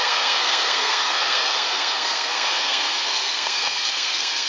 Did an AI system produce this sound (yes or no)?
yes